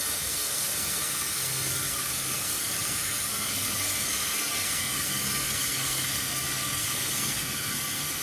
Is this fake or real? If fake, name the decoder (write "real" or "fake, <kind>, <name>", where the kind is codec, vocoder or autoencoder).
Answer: fake, codec, SNAC